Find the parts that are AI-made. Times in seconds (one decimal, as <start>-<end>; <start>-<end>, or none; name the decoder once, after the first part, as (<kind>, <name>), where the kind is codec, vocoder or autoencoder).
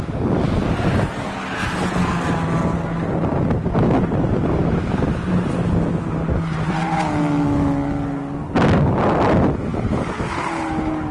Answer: none